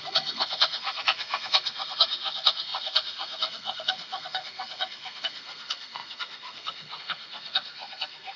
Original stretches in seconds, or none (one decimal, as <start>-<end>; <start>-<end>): none